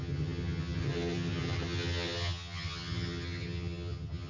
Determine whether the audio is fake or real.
fake